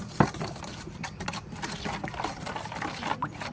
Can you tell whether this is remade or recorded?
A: recorded